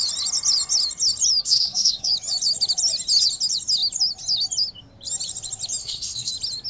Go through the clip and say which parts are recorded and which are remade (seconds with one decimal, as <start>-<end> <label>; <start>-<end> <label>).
0.0-1.4 recorded; 1.4-2.1 remade; 2.1-5.8 recorded; 5.8-6.3 remade; 6.3-6.7 recorded